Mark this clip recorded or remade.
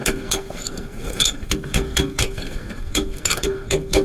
remade